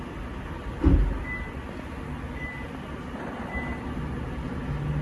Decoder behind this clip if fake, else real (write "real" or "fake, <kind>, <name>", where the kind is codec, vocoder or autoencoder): real